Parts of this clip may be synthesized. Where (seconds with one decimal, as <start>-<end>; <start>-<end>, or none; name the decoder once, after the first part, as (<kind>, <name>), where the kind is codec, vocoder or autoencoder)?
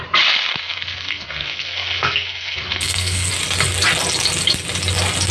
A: 0.5-3.3 (codec, SNAC)